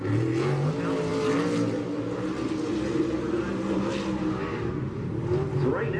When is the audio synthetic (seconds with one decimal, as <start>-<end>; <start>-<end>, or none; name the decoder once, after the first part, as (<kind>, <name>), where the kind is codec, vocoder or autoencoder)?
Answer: none